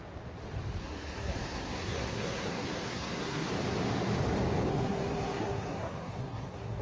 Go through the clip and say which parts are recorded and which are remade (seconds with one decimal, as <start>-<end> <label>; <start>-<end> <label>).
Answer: 0.0-0.8 recorded; 0.8-3.5 remade; 3.5-4.7 recorded; 4.7-6.8 remade